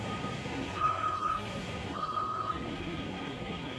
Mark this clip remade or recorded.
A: remade